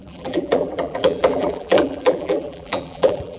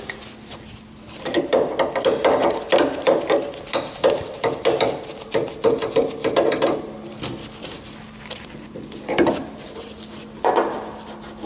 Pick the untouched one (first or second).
second